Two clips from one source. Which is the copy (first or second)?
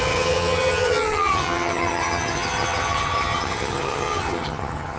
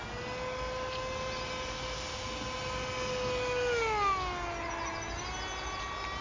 first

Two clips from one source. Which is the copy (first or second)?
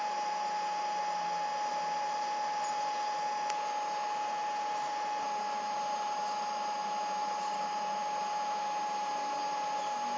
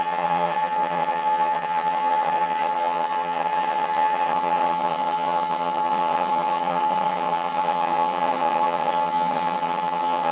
second